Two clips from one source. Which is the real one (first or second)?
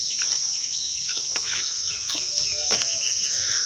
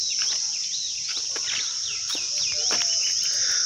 second